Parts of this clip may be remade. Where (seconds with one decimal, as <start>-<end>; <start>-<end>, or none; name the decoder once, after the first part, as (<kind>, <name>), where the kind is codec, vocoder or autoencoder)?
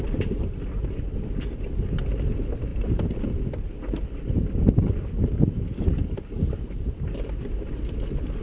none